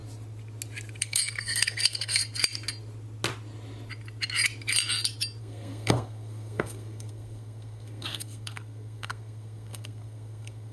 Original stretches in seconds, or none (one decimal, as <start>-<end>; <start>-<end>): 0.0-1.0; 2.2-5.4